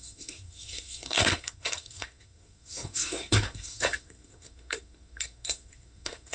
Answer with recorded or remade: remade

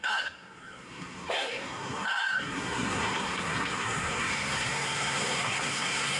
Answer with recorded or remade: remade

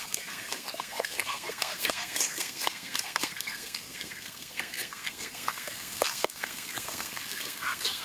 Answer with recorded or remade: remade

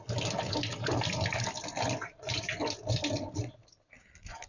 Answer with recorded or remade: recorded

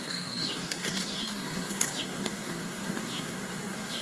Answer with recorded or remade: remade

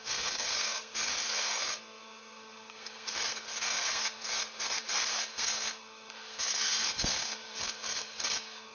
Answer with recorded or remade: remade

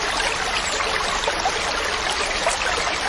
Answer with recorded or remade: recorded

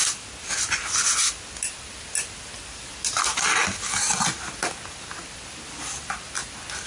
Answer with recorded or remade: recorded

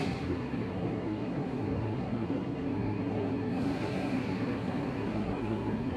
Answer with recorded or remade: remade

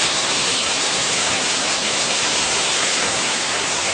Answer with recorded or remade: remade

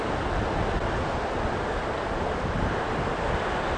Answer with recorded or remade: recorded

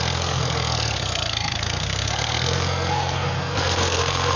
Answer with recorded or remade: remade